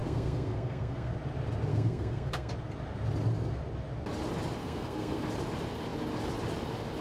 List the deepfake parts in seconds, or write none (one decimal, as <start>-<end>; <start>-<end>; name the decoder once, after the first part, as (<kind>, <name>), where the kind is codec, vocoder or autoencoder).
0.0-1.1 (codec, SNAC); 1.7-2.5; 4.6-5.2